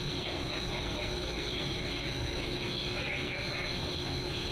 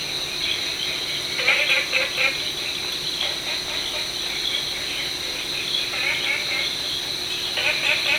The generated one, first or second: first